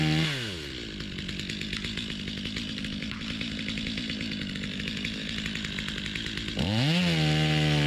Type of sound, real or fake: real